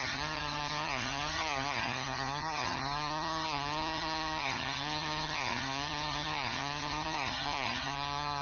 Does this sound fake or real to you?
fake